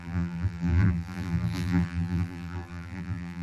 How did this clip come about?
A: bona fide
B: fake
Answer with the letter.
B